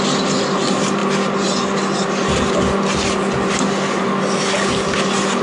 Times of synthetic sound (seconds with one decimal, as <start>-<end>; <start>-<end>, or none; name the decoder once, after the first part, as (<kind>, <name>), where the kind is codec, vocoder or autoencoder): none